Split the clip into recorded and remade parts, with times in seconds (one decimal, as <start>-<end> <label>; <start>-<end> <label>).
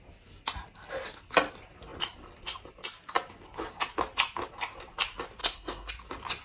0.0-5.4 recorded; 5.4-5.9 remade; 5.9-6.4 recorded